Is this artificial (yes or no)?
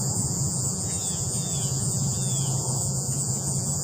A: yes